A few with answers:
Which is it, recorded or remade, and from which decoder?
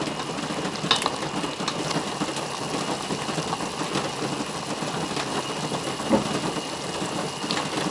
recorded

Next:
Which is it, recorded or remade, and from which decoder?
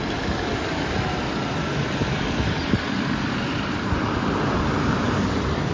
remade, vocoder, BigVGAN v2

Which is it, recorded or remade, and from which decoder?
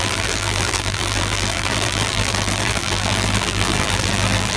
remade, vocoder, BigVGAN v2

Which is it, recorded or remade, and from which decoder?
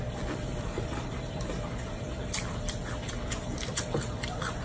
remade, vocoder, BigVGAN v2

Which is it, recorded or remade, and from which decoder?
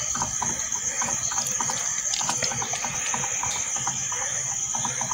recorded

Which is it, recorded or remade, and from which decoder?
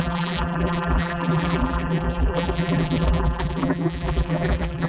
remade, vocoder, BigVGAN v2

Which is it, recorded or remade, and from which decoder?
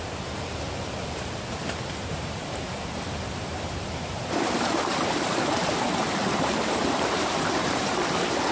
remade, vocoder, BigVGAN v2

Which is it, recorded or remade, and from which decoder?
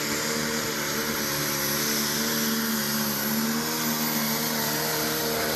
recorded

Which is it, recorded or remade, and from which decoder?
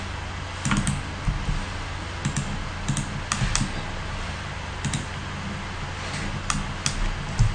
recorded